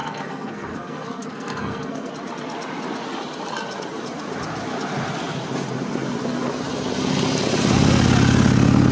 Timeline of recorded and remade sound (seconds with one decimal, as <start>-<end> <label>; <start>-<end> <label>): 0.0-2.1 remade; 2.1-8.9 recorded